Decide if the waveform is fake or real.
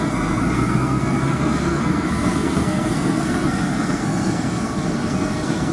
fake